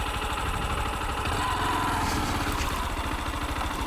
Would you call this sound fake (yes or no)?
no